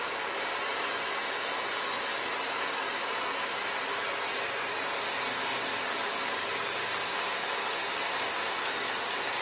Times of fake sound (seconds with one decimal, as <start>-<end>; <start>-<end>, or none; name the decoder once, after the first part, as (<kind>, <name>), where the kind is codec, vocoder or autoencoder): 5.7-6.6 (codec, DAC)